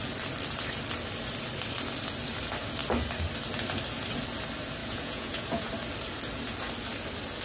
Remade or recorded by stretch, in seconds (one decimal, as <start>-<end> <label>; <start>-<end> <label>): 0.0-4.8 recorded; 4.8-5.7 remade; 5.7-7.4 recorded